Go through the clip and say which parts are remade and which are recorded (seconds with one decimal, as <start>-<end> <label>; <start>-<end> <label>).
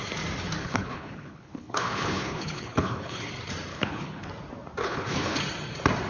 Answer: 0.0-0.6 recorded; 0.6-3.3 remade; 3.3-3.7 recorded; 3.7-4.3 remade; 4.3-4.8 recorded; 4.8-5.4 remade; 5.4-6.1 recorded